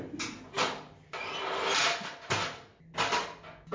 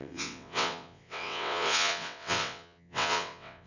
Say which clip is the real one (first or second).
first